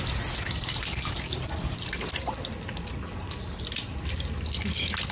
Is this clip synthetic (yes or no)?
no